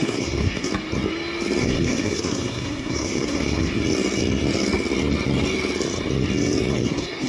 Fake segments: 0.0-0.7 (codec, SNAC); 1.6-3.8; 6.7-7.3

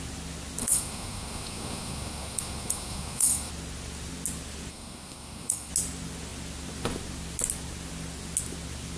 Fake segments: 0.6-3.5 (codec, SNAC); 4.7-5.7

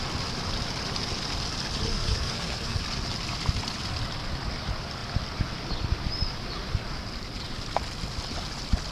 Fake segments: 1.9-2.8 (codec, SNAC)

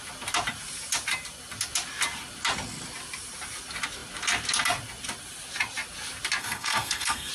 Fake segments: 6.4-7.3 (codec, SNAC)

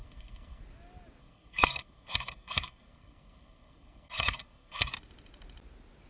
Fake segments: 0.0-0.6 (codec, SNAC); 1.2-4.9

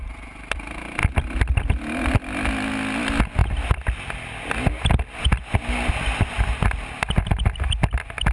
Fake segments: none